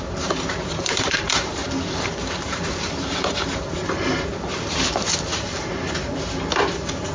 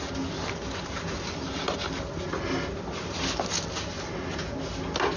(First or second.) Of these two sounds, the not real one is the first